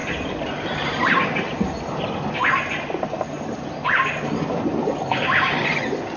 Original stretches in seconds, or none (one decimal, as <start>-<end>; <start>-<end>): 0.0-6.2